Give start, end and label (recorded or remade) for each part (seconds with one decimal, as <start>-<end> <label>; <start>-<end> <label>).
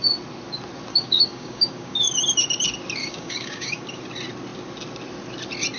0.0-0.9 recorded; 0.9-2.1 remade; 2.1-3.0 recorded; 3.0-4.0 remade; 4.0-5.8 recorded